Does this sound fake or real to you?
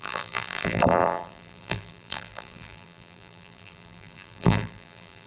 fake